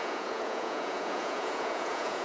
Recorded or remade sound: remade